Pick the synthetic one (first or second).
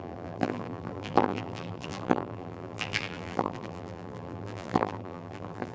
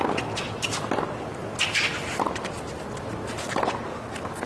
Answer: first